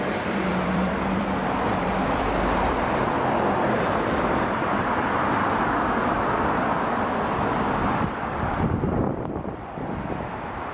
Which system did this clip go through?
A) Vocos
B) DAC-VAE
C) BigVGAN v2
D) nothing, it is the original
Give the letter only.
C